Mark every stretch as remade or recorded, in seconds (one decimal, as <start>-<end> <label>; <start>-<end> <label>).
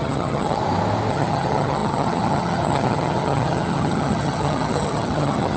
0.0-0.6 remade; 0.6-1.1 recorded; 1.1-5.6 remade